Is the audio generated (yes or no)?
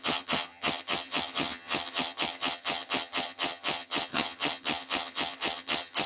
yes